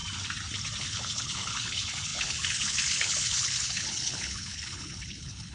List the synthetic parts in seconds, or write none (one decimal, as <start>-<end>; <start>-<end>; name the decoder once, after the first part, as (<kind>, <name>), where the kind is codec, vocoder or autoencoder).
0.8-5.5 (codec, HILCodec)